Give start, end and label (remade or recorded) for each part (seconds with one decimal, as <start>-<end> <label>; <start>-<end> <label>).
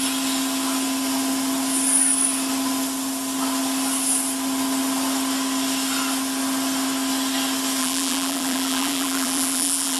0.0-7.8 recorded; 7.8-10.0 remade